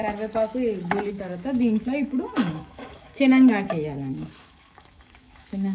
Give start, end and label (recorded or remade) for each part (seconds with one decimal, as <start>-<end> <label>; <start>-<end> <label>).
0.0-1.1 recorded; 1.1-5.7 remade